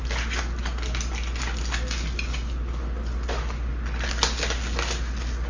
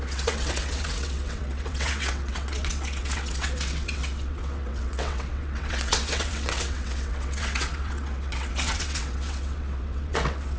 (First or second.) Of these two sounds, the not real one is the second